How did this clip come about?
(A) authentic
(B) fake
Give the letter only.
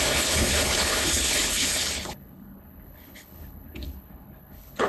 B